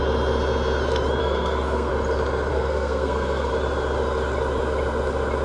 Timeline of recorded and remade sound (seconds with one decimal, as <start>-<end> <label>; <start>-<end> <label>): 0.0-1.2 recorded; 1.2-1.9 remade; 1.9-2.5 recorded; 2.5-3.5 remade; 3.5-5.4 recorded